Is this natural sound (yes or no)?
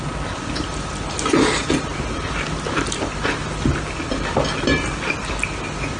yes